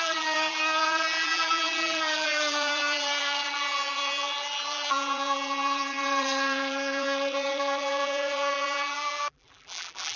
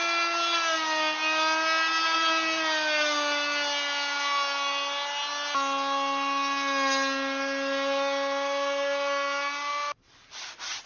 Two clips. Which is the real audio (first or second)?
second